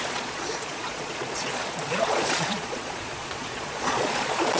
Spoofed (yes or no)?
yes